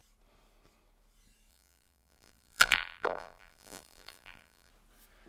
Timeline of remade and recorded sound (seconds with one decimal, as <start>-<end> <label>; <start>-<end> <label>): 0.0-1.5 recorded; 1.5-4.7 remade; 4.7-5.3 recorded